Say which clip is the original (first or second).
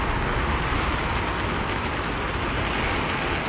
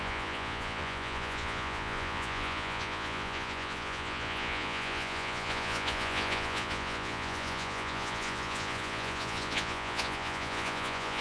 first